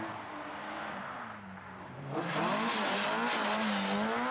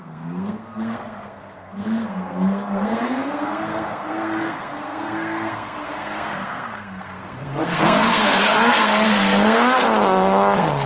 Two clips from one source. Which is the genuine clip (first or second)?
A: first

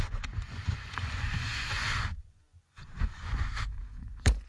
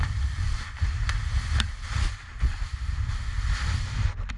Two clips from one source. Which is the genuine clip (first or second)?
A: second